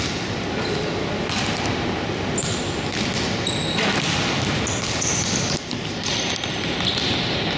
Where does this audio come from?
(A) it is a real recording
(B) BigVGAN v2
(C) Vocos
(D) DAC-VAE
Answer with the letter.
A